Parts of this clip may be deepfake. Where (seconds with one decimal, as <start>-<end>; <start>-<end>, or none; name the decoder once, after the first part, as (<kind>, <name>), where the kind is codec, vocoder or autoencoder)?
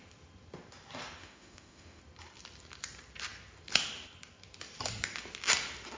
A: 1.2-2.0 (autoencoder, DAC-VAE)